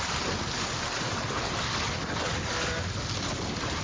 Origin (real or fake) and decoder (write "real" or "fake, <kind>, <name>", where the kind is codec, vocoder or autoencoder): real